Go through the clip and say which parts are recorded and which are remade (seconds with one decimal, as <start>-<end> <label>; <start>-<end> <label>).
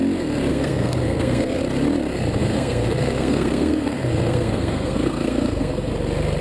0.0-0.5 recorded; 0.5-1.6 remade; 1.6-2.4 recorded; 2.4-5.9 remade; 5.9-6.4 recorded